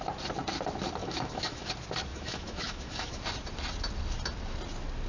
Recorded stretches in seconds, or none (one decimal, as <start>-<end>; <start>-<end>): 0.0-1.0; 1.7-2.1; 3.2-5.1